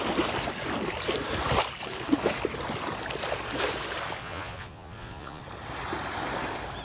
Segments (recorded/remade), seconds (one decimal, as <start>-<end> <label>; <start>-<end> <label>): 0.0-4.2 recorded; 4.2-5.4 remade; 5.4-6.8 recorded